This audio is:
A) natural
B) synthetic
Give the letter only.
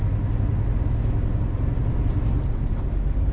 A